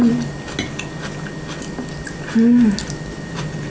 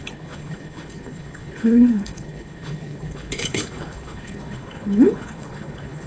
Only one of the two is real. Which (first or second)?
first